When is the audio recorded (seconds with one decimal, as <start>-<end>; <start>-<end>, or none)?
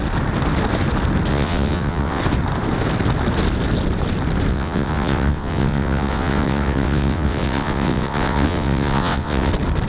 0.0-1.3; 2.2-4.5; 9.5-9.9